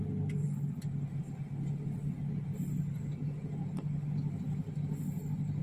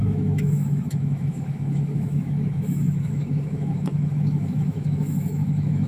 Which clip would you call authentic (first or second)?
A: first